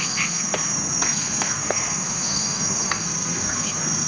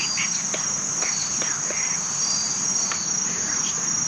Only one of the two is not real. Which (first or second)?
first